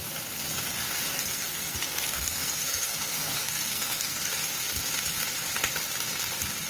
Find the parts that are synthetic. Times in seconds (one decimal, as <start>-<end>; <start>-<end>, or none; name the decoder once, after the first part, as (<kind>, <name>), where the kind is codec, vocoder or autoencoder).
1.1-4.3 (codec, SNAC)